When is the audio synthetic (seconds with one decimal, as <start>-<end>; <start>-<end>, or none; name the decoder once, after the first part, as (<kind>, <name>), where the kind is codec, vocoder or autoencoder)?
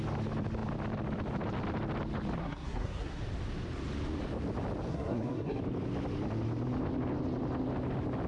2.4-3.2 (codec, SNAC); 4.9-5.6